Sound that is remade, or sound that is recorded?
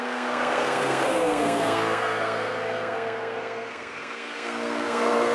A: remade